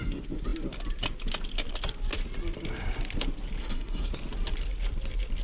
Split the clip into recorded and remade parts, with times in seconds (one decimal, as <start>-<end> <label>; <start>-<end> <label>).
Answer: 0.0-3.6 recorded; 3.6-4.1 remade; 4.1-5.4 recorded